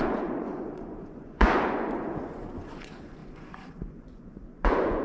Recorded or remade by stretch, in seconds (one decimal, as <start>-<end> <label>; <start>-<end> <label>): 0.0-5.0 remade